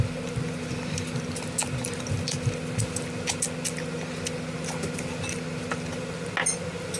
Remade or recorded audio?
recorded